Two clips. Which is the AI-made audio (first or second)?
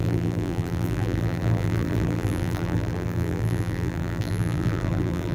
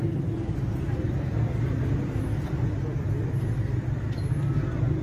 first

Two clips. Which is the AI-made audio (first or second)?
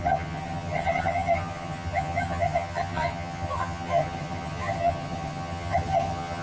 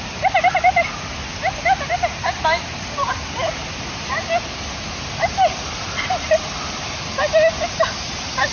first